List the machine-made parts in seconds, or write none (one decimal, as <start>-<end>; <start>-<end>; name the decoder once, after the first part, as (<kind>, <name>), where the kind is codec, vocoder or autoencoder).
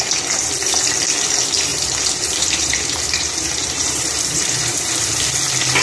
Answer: 1.7-5.2 (vocoder, BigVGAN v2)